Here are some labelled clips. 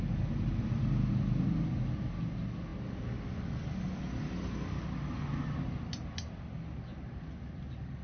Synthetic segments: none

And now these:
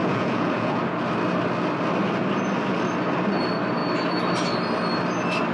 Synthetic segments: 0.0-0.8 (vocoder, Vocos)

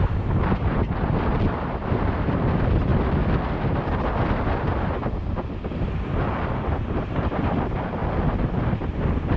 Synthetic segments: 0.0-2.9 (vocoder, BigVGAN v2); 5.7-8.0; 8.7-9.4

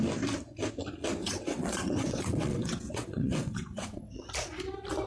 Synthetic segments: 1.2-4.3 (vocoder, WaveNeXt)

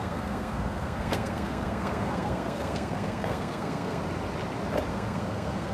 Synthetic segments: 0.0-4.0 (codec, SNAC); 4.9-5.7

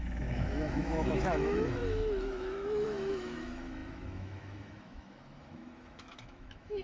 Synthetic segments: 0.0-6.8 (autoencoder, DAC-VAE)